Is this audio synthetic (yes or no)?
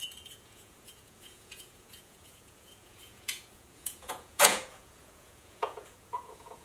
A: yes